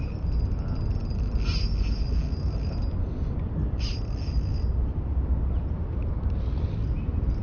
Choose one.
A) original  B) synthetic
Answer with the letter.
A